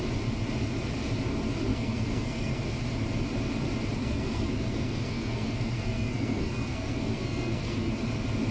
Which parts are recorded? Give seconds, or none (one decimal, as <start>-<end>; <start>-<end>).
0.0-1.7; 2.6-4.0; 7.9-8.5